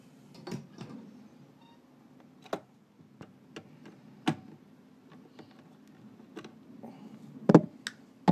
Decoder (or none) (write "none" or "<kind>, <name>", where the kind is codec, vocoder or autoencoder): none